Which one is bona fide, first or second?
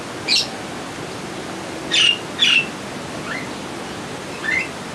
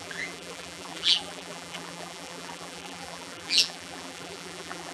first